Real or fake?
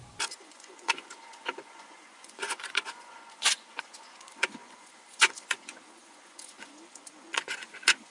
fake